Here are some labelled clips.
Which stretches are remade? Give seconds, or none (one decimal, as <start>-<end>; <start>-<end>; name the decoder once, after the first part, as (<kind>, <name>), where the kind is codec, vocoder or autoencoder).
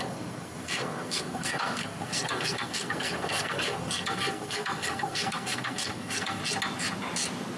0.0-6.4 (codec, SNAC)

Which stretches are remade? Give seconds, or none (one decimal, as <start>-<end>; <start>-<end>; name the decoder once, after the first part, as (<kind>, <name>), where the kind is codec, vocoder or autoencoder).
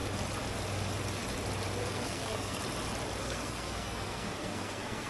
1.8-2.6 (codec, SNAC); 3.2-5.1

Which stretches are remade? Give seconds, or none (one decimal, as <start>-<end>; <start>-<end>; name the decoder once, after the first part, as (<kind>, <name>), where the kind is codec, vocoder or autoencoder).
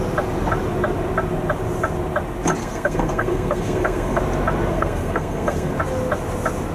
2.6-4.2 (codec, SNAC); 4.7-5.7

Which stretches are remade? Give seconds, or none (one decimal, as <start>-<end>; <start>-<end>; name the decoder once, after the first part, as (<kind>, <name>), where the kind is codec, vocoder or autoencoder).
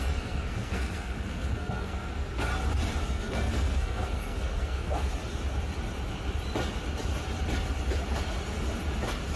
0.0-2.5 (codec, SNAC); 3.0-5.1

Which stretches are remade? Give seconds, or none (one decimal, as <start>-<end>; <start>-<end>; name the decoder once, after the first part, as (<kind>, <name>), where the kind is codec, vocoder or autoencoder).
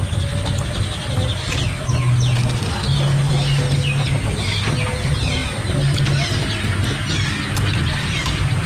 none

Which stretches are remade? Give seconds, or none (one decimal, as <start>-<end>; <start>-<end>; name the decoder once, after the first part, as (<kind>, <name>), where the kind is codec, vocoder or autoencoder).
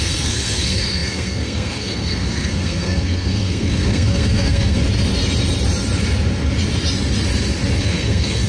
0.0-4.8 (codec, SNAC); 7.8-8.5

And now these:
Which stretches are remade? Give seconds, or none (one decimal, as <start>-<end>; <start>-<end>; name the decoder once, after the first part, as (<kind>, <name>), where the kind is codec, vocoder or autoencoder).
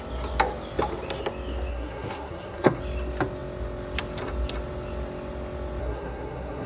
1.7-2.8 (codec, SNAC); 5.8-6.7